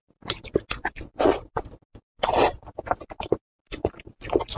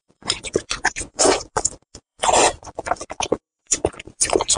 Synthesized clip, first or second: second